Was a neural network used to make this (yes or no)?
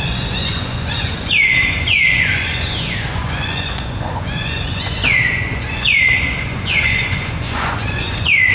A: yes